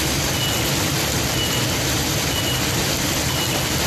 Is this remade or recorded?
recorded